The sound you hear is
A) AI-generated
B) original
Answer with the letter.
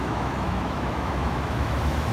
A